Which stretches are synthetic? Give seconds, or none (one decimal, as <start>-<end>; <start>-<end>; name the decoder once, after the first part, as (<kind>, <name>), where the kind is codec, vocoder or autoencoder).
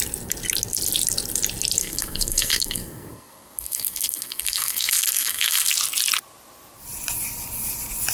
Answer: 1.8-5.7 (codec, SNAC)